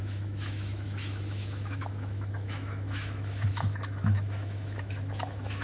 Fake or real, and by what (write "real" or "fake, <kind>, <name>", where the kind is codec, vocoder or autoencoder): fake, autoencoder, DAC-VAE